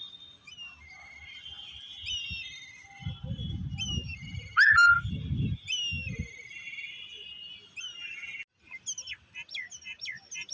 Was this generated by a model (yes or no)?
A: no